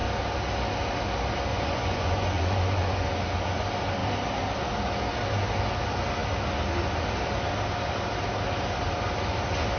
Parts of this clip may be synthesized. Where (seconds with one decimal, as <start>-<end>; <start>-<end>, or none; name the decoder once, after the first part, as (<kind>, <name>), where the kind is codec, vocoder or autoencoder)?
1.5-3.1 (vocoder, Vocos)